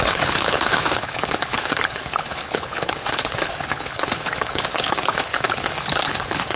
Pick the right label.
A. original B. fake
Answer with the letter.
B